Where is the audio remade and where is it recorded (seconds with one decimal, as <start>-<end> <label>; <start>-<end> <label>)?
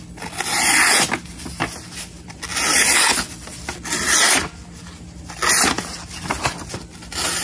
0.0-7.4 recorded